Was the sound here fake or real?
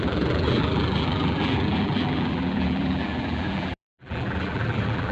fake